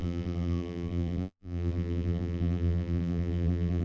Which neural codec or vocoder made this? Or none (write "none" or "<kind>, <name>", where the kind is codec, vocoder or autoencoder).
vocoder, BigVGAN v2